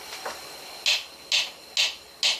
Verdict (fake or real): real